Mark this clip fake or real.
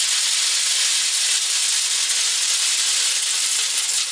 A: real